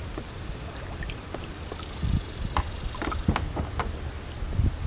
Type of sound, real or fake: real